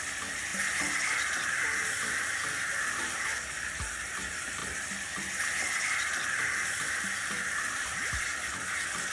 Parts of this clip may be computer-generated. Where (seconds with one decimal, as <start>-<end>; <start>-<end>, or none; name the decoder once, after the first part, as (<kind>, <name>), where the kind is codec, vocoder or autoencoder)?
0.0-4.6 (vocoder, BigVGAN v2); 6.9-9.1